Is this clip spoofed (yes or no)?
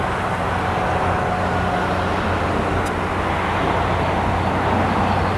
no